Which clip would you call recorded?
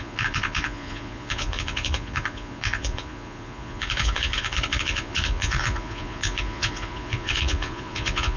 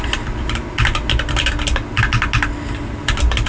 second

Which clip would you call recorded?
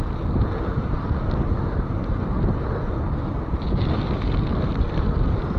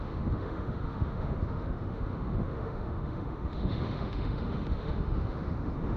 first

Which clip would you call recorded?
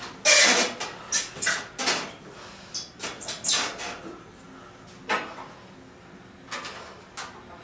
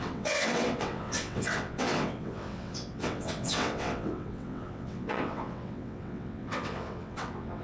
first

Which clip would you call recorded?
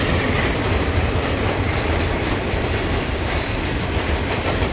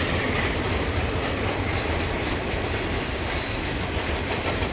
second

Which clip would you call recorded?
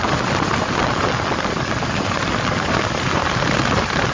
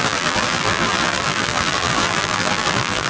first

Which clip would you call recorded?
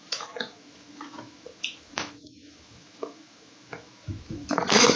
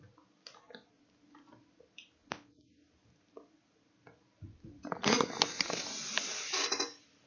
second